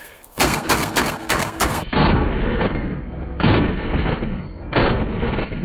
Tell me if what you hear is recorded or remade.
remade